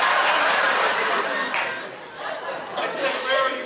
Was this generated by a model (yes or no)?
no